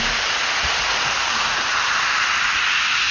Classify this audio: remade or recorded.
recorded